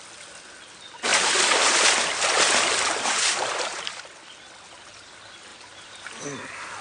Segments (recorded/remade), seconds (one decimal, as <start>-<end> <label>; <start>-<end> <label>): 0.0-1.1 recorded; 1.1-4.0 remade; 4.0-5.5 recorded; 5.5-6.2 remade; 6.2-6.8 recorded